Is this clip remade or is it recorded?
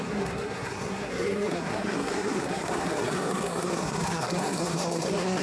remade